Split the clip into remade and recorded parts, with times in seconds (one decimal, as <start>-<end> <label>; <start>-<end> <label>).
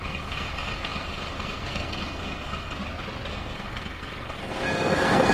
0.0-2.8 remade; 2.8-3.3 recorded; 3.3-5.3 remade